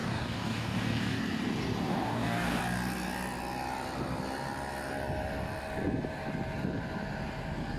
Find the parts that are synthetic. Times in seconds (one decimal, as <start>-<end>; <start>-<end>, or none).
0.0-1.2; 1.9-2.6